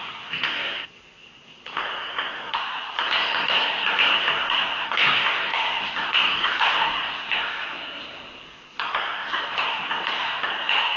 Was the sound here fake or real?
fake